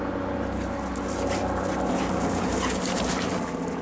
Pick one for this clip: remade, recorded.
recorded